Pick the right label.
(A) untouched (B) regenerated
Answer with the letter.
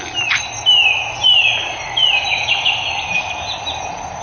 A